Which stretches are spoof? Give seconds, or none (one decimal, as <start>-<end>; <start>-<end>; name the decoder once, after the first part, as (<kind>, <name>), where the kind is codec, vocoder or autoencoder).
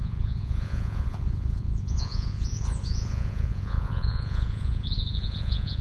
0.0-5.8 (vocoder, Vocos)